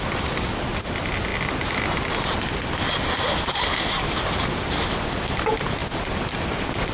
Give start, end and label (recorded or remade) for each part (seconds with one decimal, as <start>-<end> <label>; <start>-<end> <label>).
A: 0.0-6.9 recorded